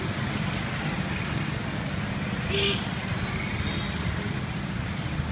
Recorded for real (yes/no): yes